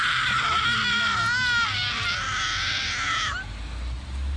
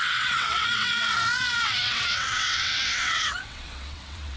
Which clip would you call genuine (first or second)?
first